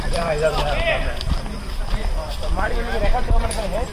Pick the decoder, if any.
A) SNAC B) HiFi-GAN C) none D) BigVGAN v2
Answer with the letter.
D